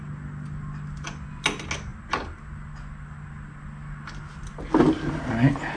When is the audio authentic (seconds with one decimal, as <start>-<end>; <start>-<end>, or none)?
0.0-5.8